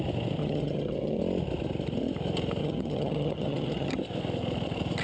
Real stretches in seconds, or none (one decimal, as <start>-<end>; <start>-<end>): 0.0-0.4; 1.2-2.6; 4.0-5.0